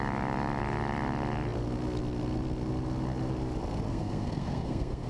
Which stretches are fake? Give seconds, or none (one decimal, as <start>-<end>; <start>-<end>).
3.9-5.1